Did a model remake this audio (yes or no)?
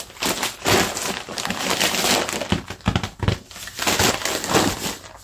no